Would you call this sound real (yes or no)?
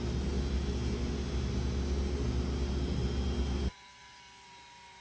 yes